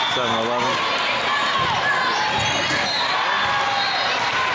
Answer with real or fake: real